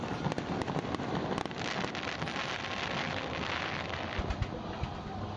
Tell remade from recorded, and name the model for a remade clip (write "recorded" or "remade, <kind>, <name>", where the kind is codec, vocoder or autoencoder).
recorded